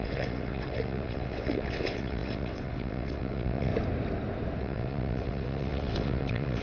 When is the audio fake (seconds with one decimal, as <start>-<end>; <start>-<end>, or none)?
0.0-3.7; 4.6-6.6